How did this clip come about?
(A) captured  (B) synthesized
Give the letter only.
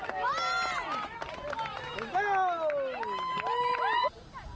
A